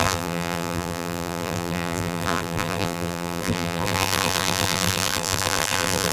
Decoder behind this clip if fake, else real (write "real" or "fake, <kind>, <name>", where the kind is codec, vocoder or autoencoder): fake, vocoder, BigVGAN v2